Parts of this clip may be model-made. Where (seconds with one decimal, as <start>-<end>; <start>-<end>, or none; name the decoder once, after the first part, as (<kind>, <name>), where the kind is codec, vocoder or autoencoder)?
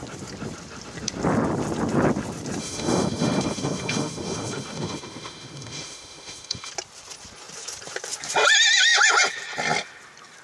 2.6-6.7 (autoencoder, DAC-VAE)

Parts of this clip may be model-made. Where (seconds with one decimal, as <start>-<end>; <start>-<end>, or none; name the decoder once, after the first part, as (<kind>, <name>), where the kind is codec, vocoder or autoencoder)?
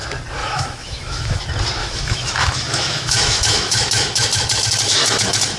0.4-1.4 (autoencoder, DAC-VAE); 1.8-5.6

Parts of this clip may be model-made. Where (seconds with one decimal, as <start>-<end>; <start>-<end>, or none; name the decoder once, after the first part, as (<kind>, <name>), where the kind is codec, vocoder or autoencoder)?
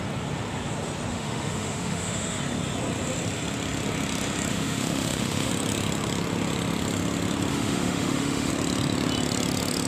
1.1-2.4 (autoencoder, DAC-VAE); 4.5-5.5; 7.5-8.5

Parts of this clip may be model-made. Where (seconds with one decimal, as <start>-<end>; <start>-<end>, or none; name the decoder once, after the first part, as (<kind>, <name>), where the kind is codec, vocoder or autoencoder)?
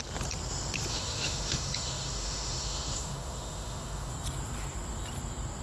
0.9-4.1 (autoencoder, DAC-VAE)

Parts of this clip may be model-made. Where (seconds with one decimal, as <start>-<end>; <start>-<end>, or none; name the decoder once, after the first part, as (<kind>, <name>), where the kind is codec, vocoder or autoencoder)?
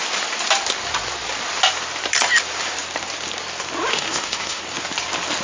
3.9-4.6 (autoencoder, DAC-VAE)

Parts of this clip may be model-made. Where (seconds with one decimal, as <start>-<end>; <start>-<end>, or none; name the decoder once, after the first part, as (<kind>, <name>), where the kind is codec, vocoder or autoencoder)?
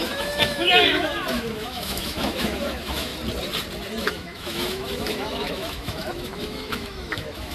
0.0-3.1 (autoencoder, DAC-VAE); 4.0-7.5